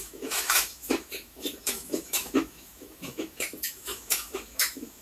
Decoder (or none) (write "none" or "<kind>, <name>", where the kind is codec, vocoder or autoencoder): autoencoder, DAC-VAE